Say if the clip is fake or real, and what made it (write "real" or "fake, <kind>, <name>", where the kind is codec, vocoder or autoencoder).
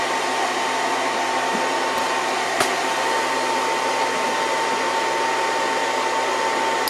real